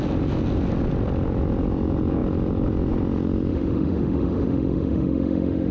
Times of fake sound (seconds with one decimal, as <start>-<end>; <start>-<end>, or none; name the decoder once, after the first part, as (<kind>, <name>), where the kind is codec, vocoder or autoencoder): 3.5-5.7 (autoencoder, DAC-VAE)